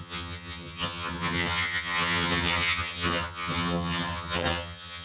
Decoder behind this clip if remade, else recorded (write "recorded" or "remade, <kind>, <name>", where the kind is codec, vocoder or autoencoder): remade, vocoder, HiFi-GAN